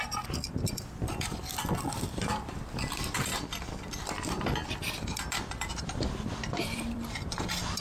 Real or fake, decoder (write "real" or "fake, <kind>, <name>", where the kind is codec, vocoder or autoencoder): fake, vocoder, BigVGAN v2